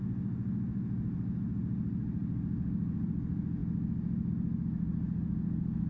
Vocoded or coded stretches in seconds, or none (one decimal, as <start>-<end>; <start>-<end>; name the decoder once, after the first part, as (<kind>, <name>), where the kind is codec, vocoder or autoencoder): none